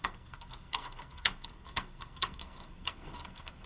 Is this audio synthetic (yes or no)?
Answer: yes